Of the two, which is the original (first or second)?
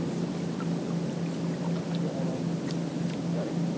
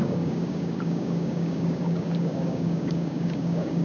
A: first